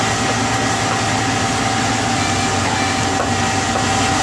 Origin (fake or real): real